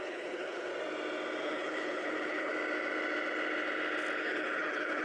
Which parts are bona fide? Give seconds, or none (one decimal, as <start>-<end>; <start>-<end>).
0.7-1.4; 2.5-4.2